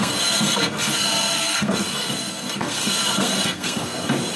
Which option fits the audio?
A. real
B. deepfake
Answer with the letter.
B